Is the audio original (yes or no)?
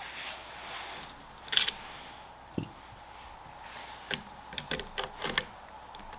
yes